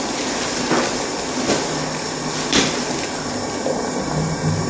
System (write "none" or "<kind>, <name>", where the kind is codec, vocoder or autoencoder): none